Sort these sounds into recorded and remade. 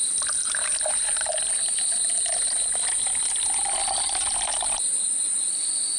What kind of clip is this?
recorded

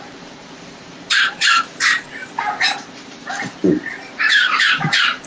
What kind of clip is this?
remade